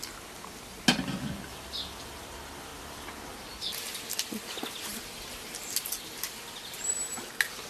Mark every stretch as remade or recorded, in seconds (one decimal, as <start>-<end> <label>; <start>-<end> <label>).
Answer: 0.0-7.7 recorded